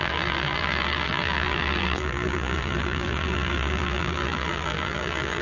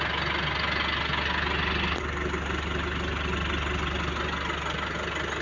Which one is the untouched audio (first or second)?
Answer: second